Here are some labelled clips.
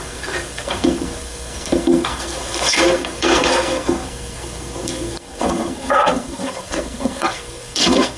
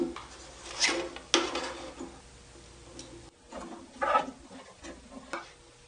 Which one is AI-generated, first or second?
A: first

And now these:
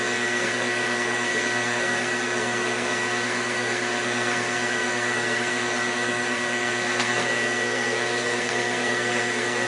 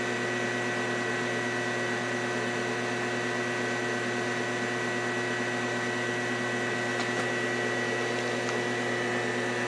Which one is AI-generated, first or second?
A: first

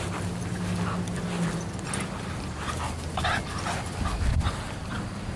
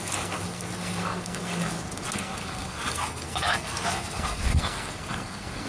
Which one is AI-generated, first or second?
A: second